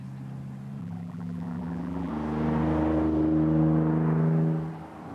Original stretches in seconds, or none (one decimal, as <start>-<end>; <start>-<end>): 0.0-0.8; 2.1-5.1